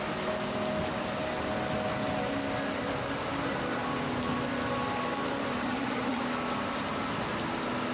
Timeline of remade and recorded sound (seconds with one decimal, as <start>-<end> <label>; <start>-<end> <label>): 0.0-5.6 recorded; 5.6-6.2 remade; 6.2-7.9 recorded